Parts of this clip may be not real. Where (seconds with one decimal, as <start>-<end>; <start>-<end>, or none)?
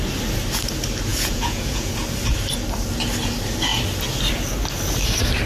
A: 1.1-1.9